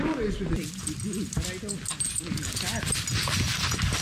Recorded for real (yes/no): yes